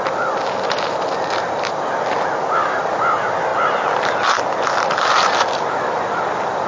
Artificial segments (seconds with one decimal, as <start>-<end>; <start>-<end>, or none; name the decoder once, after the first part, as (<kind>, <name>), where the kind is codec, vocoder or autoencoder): none